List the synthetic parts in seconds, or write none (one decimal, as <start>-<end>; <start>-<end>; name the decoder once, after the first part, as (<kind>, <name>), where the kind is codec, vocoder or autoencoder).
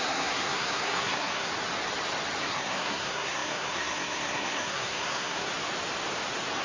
0.0-1.5 (codec, SNAC); 2.4-5.5